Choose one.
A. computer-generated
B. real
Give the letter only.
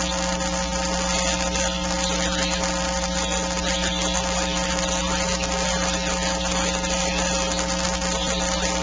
B